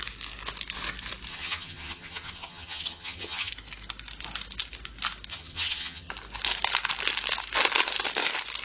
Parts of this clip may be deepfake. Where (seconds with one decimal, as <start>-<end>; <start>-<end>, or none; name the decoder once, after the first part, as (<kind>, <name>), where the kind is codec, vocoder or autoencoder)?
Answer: 1.3-3.5 (vocoder, HiFi-GAN); 5.3-6.1